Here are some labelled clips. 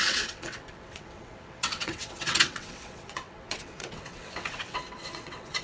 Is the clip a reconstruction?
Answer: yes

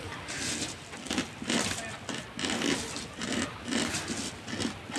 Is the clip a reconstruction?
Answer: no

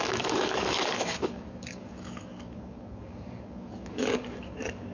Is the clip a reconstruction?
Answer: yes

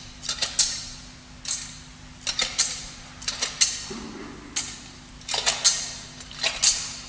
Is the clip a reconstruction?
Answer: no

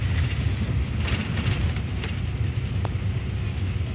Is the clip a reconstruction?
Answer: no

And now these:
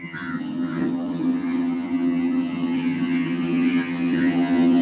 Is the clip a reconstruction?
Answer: yes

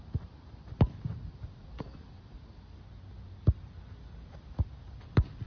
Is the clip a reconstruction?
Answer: no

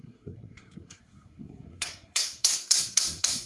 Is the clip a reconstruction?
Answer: yes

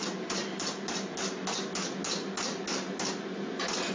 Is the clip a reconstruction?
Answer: no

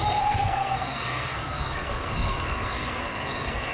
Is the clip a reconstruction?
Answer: yes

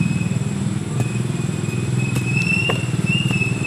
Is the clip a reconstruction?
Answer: yes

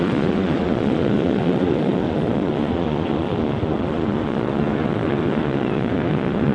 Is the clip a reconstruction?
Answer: yes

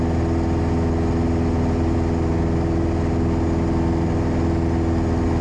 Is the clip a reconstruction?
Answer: no